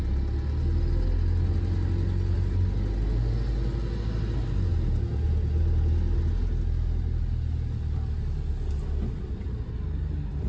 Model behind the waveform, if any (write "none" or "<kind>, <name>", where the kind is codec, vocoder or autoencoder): none